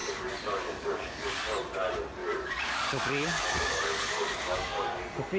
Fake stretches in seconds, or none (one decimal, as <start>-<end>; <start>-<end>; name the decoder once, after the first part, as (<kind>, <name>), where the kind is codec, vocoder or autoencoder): 0.0-1.4 (codec, DAC); 2.2-5.0